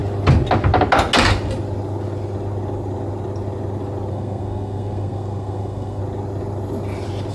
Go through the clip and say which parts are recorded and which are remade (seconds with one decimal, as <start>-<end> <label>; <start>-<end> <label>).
0.0-4.1 recorded; 4.1-6.0 remade; 6.0-7.3 recorded